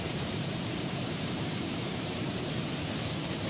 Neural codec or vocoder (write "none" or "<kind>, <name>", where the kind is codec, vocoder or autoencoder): vocoder, BigVGAN v2